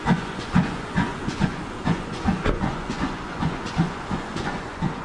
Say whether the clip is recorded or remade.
remade